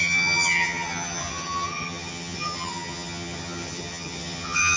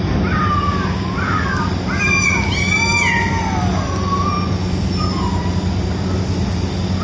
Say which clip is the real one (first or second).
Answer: second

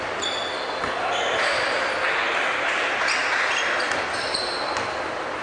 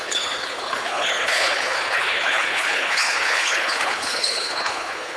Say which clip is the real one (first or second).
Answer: first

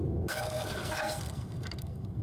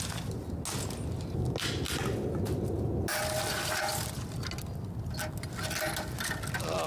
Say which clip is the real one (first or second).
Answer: second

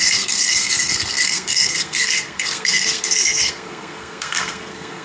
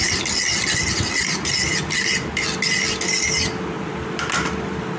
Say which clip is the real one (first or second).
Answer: second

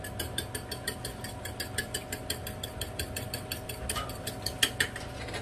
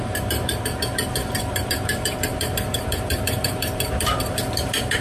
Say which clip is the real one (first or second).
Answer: first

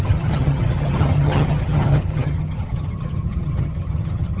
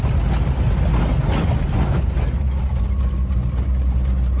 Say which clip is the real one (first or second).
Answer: second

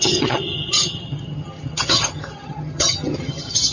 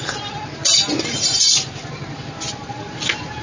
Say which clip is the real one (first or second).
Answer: second